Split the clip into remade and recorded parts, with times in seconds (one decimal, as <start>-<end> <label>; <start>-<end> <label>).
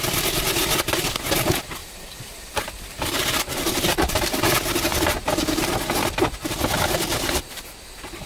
0.0-1.8 recorded; 1.8-4.2 remade; 4.2-8.3 recorded